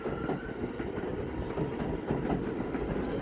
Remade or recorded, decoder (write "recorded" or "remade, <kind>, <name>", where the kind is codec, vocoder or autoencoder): recorded